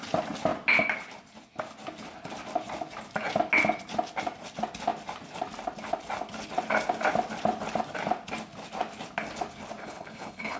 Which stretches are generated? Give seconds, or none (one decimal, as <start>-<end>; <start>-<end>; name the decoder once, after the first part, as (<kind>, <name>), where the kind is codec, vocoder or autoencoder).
9.8-10.6 (codec, HILCodec)